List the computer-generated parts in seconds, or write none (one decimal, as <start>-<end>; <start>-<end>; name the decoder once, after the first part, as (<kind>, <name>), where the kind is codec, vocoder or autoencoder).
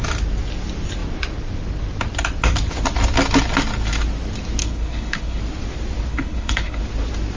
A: 4.6-5.4 (codec, HILCodec); 6.1-6.8